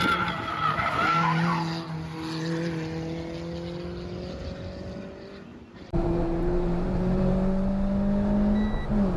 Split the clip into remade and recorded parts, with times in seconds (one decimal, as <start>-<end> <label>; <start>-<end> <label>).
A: 0.0-5.5 recorded; 5.5-7.3 remade; 7.3-9.2 recorded